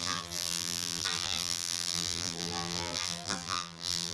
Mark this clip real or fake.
fake